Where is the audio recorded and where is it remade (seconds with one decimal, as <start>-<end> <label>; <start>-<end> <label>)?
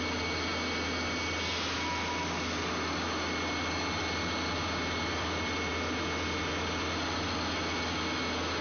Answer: 0.0-8.6 recorded